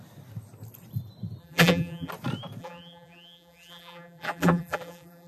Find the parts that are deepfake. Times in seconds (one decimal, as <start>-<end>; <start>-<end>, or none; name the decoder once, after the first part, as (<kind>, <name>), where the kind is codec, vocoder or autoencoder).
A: 1.4-2.1 (vocoder, BigVGAN v2); 2.6-5.3